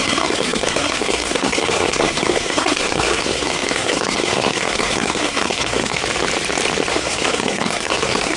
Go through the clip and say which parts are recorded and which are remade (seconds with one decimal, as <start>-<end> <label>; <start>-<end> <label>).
0.0-6.0 remade; 6.0-6.9 recorded; 6.9-8.4 remade